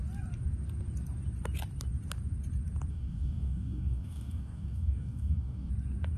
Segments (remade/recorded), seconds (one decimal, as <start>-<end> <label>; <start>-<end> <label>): 0.0-2.9 recorded; 2.9-5.7 remade; 5.7-6.2 recorded